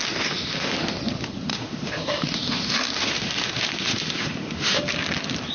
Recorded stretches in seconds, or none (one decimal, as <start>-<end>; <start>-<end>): 1.0-1.5; 4.8-5.5